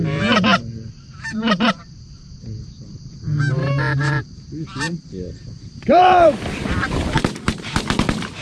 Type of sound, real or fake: fake